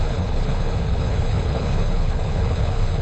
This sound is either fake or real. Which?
fake